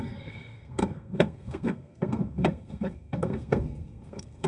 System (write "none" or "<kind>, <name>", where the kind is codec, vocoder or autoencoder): codec, SNAC